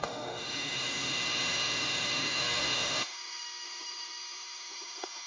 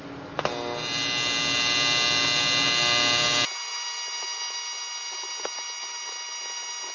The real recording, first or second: second